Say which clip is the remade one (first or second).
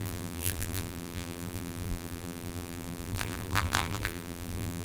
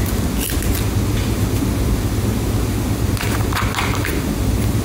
first